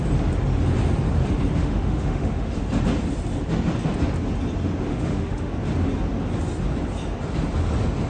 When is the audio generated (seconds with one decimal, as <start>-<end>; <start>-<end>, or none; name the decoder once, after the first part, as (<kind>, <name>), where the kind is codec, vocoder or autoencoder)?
1.6-2.6 (autoencoder, DAC-VAE); 4.9-5.5

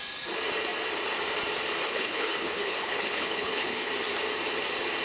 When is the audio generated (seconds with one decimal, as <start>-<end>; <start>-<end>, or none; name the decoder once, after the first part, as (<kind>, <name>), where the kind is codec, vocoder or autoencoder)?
1.8-3.9 (codec, HILCodec)

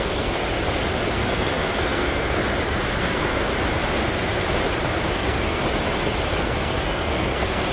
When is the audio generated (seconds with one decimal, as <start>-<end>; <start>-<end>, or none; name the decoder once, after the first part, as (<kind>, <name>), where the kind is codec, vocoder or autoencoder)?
0.0-0.4 (codec, SNAC); 1.1-2.4; 3.0-3.5; 5.1-5.6; 6.4-7.7

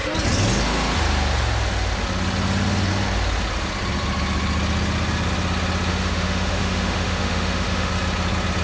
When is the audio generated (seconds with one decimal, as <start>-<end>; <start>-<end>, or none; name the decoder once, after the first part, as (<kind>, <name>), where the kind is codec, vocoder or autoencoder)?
5.9-7.9 (autoencoder, DAC-VAE)

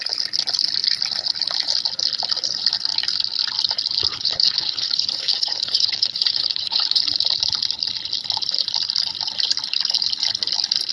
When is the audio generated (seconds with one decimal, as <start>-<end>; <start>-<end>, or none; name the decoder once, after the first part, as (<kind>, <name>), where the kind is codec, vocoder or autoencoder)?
4.1-7.0 (codec, HILCodec)

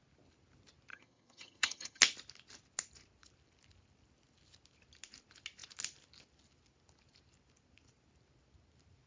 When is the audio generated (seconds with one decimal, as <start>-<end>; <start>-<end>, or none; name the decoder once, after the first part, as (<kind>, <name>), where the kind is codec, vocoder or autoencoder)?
0.9-2.0 (vocoder, HiFi-GAN)